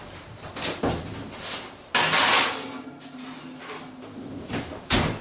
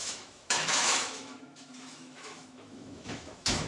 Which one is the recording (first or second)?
first